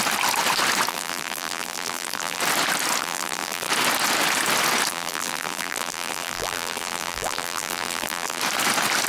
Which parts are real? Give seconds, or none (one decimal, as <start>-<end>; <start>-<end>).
0.0-0.9; 2.4-3.0; 3.7-4.9; 8.4-9.1